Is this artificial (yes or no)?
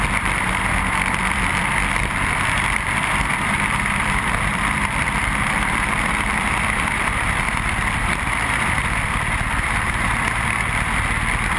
yes